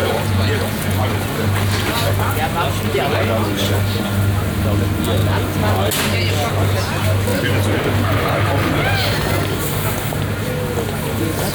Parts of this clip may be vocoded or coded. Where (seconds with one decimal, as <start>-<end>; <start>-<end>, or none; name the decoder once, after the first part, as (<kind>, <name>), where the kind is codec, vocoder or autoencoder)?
0.0-1.1 (vocoder, Vocos)